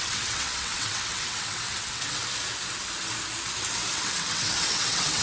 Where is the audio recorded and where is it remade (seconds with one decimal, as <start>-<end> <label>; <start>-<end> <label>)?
0.0-2.2 remade; 2.2-3.9 recorded; 3.9-5.2 remade